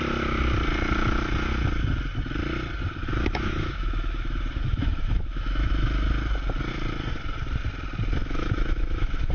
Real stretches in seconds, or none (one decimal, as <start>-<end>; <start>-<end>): 0.0-3.0; 5.7-8.2